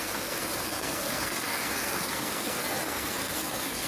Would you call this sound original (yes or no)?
no